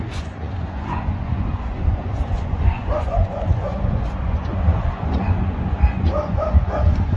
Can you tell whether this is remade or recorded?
remade